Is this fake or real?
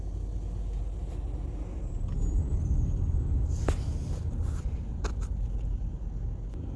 real